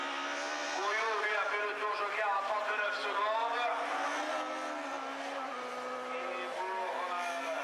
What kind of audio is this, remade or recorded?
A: recorded